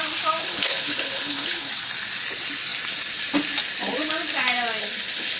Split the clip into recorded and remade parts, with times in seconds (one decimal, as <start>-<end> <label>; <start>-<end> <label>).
0.0-0.4 recorded; 0.4-1.7 remade; 1.7-4.8 recorded; 4.8-5.4 remade